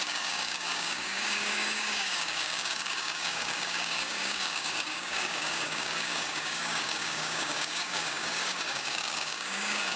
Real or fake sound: fake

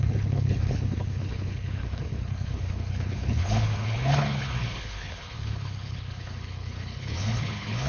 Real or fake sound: fake